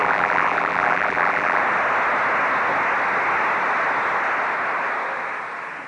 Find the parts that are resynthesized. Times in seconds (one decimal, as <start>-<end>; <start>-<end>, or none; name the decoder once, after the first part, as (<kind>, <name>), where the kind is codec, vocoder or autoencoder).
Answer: 0.0-1.6 (vocoder, BigVGAN v2)